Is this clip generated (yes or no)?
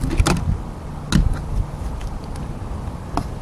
no